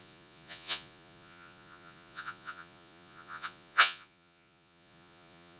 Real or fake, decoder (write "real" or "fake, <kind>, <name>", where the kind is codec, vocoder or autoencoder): fake, vocoder, Vocos